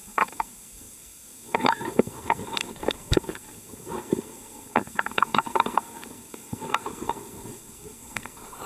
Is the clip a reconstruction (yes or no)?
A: yes